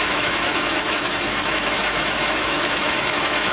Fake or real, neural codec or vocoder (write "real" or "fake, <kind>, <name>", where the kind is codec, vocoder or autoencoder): fake, autoencoder, DAC-VAE